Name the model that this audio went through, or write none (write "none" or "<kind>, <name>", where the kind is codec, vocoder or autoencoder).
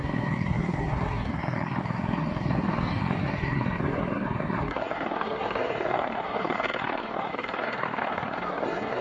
codec, SNAC